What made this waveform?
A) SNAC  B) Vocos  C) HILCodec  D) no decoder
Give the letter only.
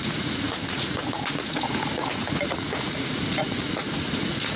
B